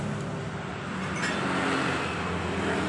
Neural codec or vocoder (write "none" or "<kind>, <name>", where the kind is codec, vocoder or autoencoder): none